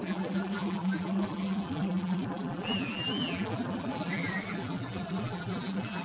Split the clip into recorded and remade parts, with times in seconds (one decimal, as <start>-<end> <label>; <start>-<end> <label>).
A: 0.0-6.0 remade